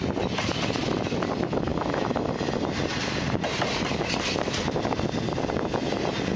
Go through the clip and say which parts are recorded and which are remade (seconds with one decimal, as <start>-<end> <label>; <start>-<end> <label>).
0.0-6.4 recorded